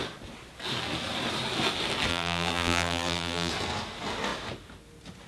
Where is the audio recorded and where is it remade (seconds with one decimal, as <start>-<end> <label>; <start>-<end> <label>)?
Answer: 0.0-2.1 recorded; 2.1-3.5 remade; 3.5-5.3 recorded